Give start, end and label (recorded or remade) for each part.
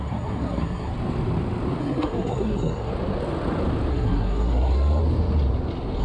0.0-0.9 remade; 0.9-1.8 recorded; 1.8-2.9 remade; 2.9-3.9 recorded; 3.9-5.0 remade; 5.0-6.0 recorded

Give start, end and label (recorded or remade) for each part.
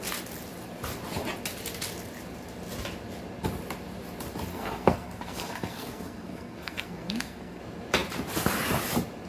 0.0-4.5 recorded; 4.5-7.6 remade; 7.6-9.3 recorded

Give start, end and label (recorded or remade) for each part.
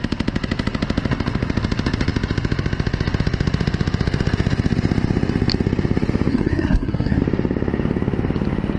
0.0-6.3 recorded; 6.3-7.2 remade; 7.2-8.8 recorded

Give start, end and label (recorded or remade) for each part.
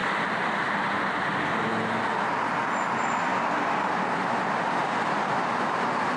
0.0-6.2 recorded